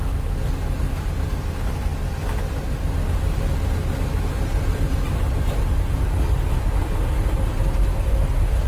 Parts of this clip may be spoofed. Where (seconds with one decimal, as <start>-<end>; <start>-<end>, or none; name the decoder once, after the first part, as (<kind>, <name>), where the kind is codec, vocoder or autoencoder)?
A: none